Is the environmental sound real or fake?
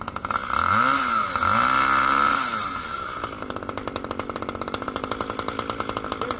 real